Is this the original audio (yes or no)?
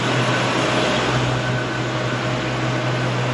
yes